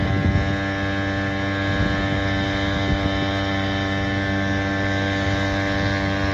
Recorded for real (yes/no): yes